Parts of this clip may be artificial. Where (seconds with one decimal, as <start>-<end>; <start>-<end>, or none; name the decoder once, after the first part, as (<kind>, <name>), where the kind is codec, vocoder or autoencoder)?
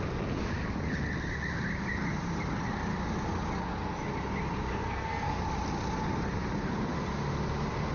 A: 4.7-5.4 (codec, SNAC)